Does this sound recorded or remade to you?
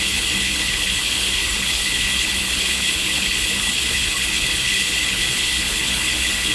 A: remade